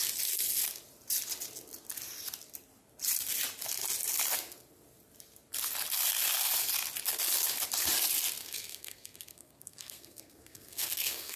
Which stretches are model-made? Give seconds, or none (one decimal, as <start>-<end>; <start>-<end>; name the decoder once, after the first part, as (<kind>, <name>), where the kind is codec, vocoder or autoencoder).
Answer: 8.4-11.4 (codec, SNAC)